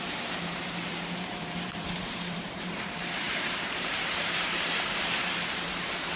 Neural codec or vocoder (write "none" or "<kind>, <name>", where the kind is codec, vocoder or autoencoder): vocoder, BigVGAN v2